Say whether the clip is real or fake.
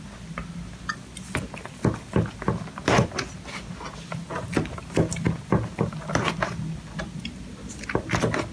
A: real